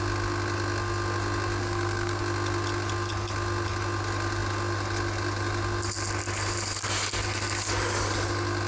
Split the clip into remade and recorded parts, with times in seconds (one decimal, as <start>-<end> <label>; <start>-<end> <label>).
0.0-1.6 recorded; 1.6-2.2 remade; 2.2-8.7 recorded